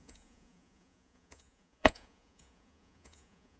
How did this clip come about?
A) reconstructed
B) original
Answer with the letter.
A